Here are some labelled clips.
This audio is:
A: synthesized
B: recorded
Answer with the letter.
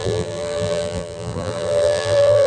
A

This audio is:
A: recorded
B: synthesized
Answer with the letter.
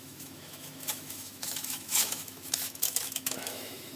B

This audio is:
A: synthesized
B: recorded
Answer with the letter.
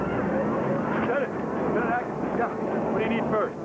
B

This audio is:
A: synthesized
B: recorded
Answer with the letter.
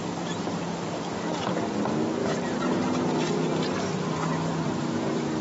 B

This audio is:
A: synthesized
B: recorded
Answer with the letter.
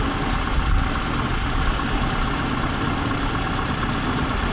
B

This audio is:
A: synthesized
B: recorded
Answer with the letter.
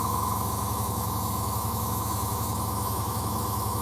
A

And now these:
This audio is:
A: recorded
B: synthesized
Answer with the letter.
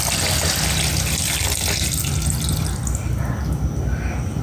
A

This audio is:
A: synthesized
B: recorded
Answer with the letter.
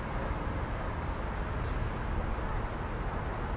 B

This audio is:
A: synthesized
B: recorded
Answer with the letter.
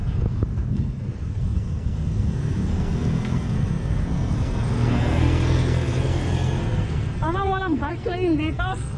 A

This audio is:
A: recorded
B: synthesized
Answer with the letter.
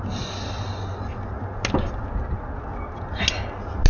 A